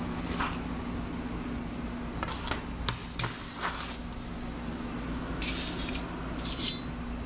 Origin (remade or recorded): recorded